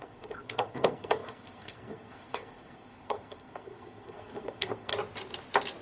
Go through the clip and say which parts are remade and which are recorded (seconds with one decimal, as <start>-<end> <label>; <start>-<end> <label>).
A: 0.0-4.9 remade; 4.9-5.8 recorded